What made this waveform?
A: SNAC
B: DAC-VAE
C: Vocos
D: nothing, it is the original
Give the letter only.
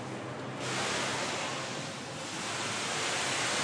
D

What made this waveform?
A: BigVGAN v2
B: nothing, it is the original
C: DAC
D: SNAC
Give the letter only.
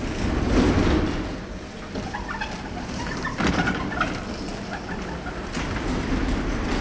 B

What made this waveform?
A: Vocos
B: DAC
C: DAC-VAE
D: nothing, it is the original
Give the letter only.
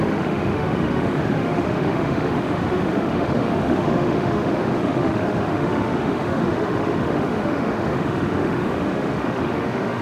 C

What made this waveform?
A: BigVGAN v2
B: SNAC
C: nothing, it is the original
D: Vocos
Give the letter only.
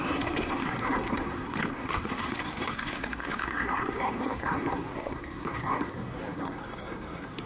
B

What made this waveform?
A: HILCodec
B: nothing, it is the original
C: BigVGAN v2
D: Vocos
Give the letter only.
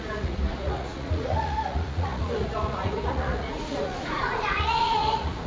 D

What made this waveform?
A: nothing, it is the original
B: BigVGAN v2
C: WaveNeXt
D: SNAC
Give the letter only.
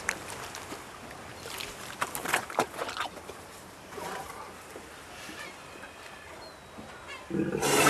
A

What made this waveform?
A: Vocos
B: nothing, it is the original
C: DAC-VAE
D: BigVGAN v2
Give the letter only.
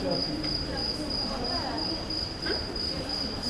D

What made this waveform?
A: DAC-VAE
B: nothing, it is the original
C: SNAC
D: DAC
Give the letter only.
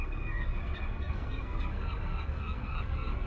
C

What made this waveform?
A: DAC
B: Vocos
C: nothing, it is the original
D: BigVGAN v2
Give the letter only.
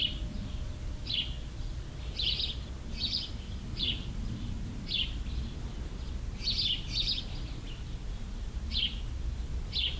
C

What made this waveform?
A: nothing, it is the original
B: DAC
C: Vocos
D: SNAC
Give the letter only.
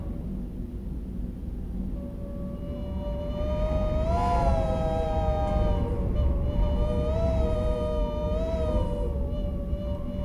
A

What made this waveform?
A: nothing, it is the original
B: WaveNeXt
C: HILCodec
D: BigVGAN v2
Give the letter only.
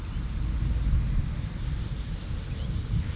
A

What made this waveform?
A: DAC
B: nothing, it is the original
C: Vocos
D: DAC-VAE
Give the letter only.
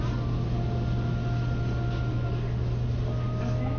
B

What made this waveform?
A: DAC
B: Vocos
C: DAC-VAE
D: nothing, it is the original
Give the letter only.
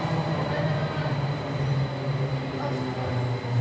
D